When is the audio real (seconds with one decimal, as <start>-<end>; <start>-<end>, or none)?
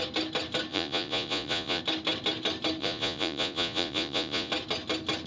0.0-0.7; 1.8-2.8; 4.5-5.3